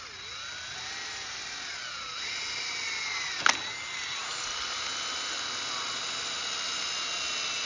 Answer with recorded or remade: recorded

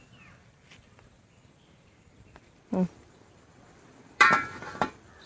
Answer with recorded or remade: remade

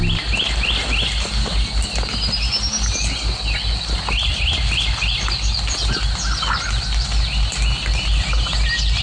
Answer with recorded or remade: recorded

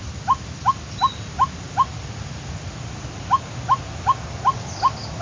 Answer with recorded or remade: recorded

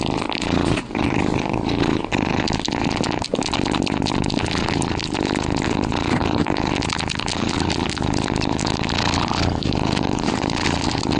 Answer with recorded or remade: recorded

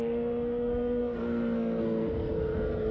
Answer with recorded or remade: remade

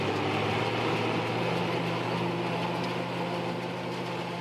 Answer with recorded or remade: recorded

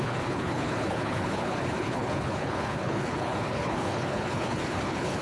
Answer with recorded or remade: remade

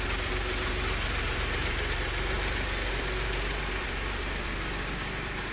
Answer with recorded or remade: remade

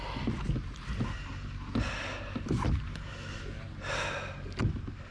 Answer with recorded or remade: recorded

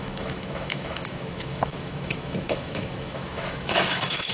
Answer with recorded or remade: remade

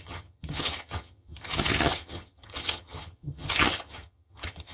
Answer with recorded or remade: remade